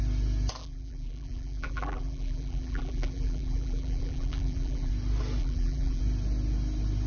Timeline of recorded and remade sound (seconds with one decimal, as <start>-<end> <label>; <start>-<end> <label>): 0.0-0.6 recorded; 0.6-4.9 remade; 4.9-5.4 recorded; 5.4-6.0 remade; 6.0-7.1 recorded